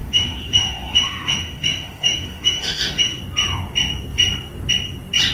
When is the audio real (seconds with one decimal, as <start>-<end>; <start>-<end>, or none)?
3.2-5.3